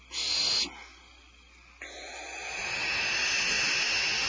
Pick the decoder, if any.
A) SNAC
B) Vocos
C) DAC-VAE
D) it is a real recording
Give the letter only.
D